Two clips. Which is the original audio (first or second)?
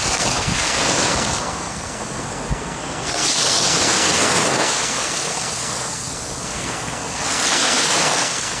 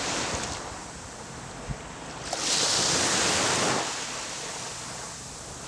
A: second